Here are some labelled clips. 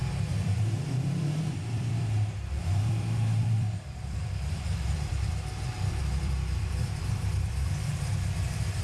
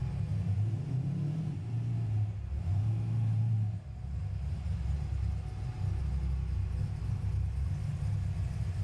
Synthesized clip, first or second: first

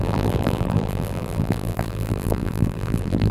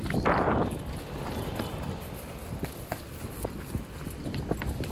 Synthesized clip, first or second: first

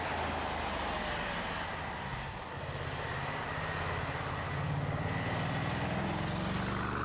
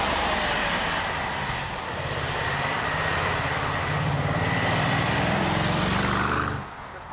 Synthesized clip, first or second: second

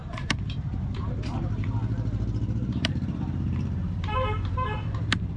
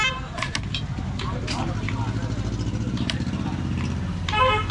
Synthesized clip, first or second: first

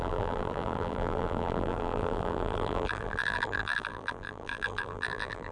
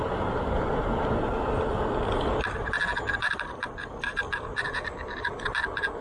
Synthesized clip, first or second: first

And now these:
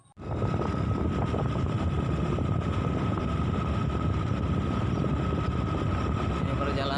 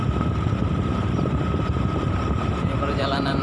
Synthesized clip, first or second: second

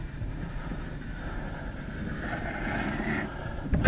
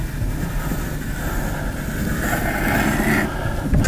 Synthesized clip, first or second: first